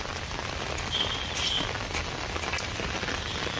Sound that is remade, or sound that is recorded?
recorded